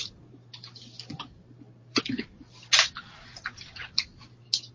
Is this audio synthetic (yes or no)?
no